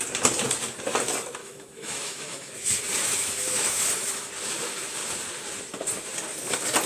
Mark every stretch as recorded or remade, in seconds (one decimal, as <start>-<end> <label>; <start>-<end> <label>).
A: 0.0-1.4 recorded; 1.4-2.5 remade; 2.5-3.0 recorded; 3.0-4.3 remade; 4.3-6.9 recorded

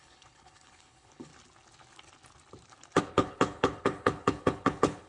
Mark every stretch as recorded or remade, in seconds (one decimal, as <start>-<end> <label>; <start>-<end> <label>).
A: 0.0-1.3 remade; 1.3-3.0 recorded; 3.0-5.1 remade

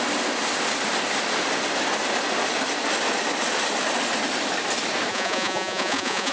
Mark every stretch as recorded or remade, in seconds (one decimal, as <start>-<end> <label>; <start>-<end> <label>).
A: 0.0-5.1 recorded; 5.1-6.3 remade

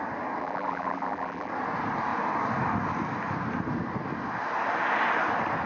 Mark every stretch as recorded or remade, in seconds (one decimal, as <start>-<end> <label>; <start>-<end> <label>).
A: 0.0-0.4 recorded; 0.4-1.5 remade; 1.5-5.7 recorded

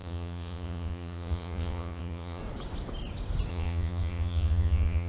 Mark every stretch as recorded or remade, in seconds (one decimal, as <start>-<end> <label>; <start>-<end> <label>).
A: 0.0-2.4 remade; 2.4-3.5 recorded; 3.5-5.1 remade

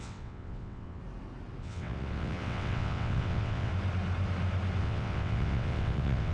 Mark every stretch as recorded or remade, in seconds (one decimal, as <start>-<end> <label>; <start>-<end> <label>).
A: 0.0-1.0 remade; 1.0-1.6 recorded; 1.6-3.7 remade; 3.7-4.8 recorded; 4.8-6.3 remade

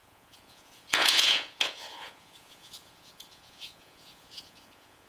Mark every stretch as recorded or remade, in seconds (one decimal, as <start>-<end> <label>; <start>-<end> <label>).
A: 0.0-5.1 remade